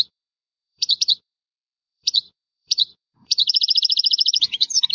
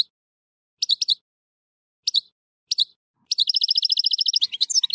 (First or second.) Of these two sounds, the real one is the second